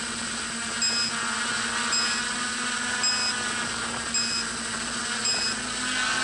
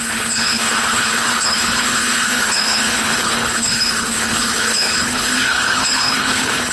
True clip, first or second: first